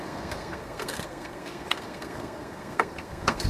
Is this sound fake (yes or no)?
yes